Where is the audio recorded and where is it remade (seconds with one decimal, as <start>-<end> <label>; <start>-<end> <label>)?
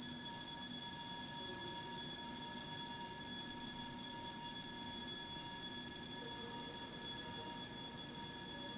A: 0.0-8.8 recorded